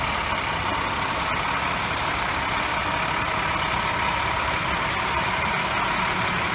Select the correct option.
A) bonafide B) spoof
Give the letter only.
A